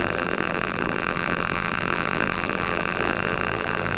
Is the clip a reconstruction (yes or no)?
yes